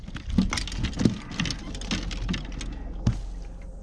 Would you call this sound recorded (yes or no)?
yes